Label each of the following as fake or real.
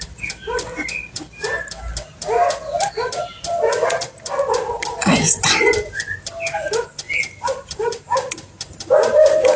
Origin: real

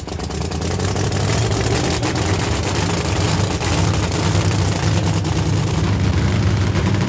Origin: real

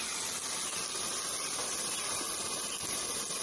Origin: real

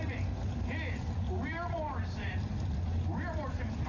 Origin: real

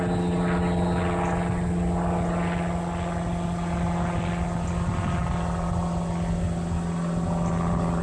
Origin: real